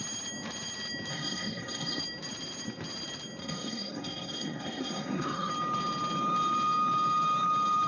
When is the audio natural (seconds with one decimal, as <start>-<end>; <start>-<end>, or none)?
0.0-1.1; 2.0-3.4; 5.5-7.9